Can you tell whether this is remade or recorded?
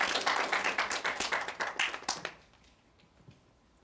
recorded